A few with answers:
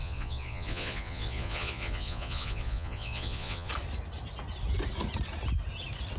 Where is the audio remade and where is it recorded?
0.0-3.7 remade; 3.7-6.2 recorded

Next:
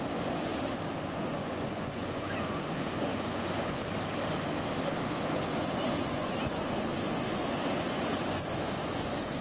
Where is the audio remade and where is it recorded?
0.0-0.5 remade; 0.5-1.0 recorded; 1.0-3.8 remade; 3.8-5.0 recorded; 5.0-9.4 remade

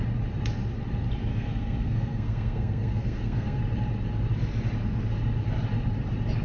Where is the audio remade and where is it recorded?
0.0-1.3 recorded; 1.3-3.6 remade; 3.6-6.4 recorded

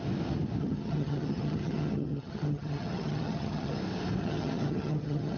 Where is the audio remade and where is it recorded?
0.0-0.6 recorded; 0.6-3.8 remade; 3.8-4.2 recorded; 4.2-5.4 remade